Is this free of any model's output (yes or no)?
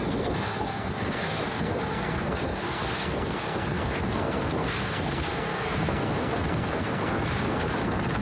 no